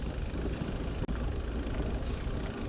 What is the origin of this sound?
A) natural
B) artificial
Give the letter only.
A